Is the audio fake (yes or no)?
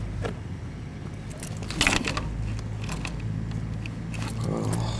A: no